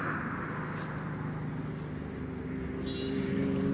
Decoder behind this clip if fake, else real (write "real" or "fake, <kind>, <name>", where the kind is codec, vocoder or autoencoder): real